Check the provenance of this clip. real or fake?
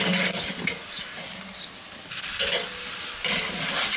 real